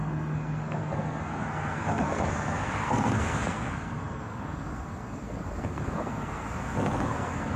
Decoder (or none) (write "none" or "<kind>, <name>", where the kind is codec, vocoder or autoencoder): codec, SNAC